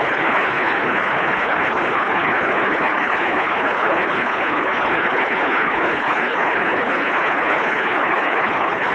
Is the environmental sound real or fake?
fake